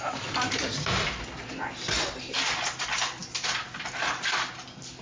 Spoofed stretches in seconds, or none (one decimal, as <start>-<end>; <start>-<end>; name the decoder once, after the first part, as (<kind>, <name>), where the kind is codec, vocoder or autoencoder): none